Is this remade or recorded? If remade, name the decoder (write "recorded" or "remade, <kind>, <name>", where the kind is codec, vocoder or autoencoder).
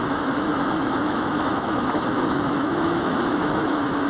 remade, autoencoder, DAC-VAE